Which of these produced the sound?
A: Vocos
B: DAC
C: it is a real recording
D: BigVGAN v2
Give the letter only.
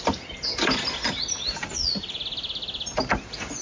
C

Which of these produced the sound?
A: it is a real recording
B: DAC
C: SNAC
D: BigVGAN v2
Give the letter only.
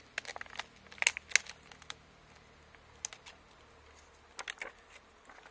A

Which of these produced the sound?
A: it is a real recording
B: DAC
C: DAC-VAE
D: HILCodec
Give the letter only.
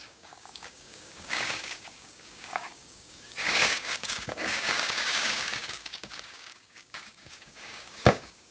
B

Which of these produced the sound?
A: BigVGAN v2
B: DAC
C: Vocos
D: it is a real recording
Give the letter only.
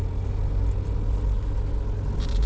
D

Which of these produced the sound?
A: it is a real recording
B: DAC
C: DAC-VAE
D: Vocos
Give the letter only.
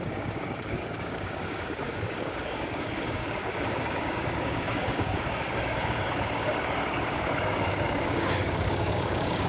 B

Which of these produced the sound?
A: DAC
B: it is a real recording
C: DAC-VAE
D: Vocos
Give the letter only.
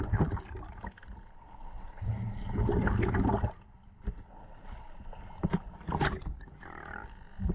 B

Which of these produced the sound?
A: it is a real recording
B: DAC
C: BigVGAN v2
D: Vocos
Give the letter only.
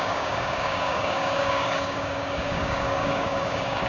B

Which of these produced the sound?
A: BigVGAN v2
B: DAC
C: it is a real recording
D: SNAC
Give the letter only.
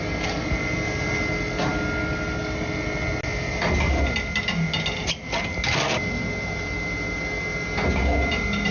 C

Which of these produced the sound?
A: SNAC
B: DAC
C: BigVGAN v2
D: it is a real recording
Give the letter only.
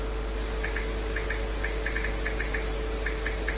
D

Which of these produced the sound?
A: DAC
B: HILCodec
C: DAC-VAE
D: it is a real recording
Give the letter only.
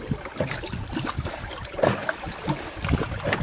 D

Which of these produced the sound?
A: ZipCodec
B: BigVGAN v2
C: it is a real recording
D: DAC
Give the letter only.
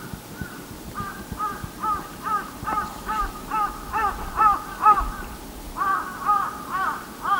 C